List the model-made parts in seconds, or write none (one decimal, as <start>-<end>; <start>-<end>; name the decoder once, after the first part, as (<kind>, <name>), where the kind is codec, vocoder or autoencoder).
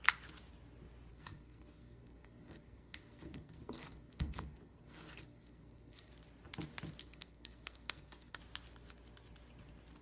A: 1.1-6.1 (codec, SNAC); 7.0-8.4